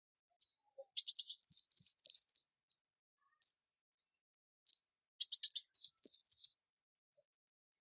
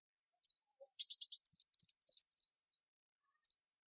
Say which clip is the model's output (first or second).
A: second